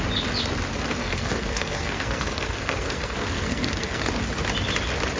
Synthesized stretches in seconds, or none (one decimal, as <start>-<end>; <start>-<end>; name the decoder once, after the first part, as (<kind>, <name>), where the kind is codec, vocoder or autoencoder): 1.0-4.1 (codec, SNAC)